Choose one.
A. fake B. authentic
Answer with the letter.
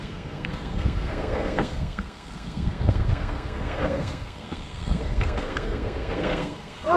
A